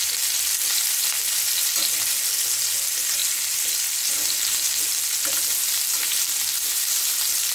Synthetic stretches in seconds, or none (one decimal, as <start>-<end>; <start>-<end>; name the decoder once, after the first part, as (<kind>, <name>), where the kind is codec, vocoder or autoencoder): none